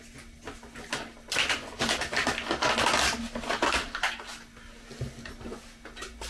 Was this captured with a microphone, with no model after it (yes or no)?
yes